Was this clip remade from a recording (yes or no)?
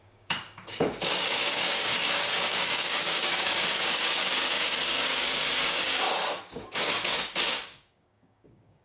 yes